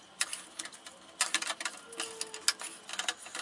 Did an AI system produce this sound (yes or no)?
no